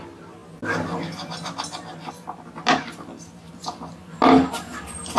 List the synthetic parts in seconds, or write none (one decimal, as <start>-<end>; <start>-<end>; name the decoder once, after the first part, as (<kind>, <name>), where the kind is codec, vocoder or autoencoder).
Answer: none

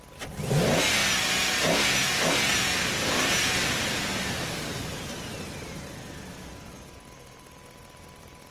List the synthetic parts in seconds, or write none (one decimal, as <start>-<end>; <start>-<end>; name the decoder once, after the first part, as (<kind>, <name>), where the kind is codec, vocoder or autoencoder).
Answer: none

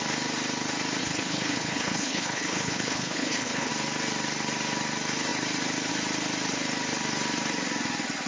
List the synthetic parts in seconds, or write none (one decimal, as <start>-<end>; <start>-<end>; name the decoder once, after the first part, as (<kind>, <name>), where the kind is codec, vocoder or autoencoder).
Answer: 1.0-3.7 (codec, HILCodec)

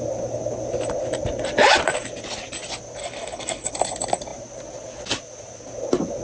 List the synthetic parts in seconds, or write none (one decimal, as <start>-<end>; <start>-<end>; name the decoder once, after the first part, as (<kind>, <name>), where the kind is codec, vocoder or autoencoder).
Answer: 3.0-3.7 (codec, HILCodec)

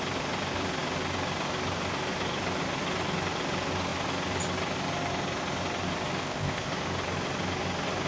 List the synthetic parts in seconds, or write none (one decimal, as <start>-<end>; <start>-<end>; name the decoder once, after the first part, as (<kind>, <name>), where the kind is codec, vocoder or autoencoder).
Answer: 6.2-6.7 (codec, ZipCodec)